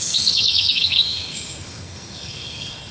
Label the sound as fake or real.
fake